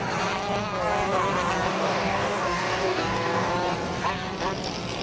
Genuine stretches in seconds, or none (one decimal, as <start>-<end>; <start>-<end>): 0.0-1.7; 3.5-5.0